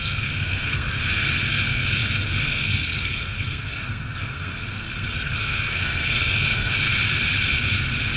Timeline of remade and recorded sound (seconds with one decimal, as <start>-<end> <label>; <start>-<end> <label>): 0.0-6.9 remade; 6.9-8.2 recorded